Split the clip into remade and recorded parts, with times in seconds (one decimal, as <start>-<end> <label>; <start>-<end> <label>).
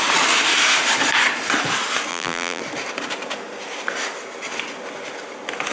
0.0-2.1 recorded; 2.1-2.6 remade; 2.6-5.7 recorded